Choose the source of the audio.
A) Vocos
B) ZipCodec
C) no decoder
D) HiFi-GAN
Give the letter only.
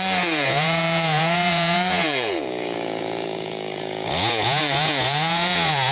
A